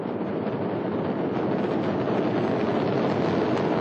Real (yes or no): yes